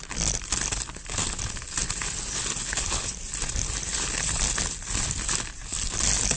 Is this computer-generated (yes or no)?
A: no